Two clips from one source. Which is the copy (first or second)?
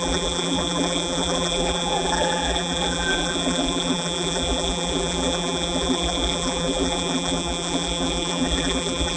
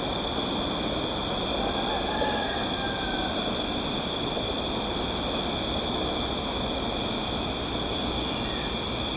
first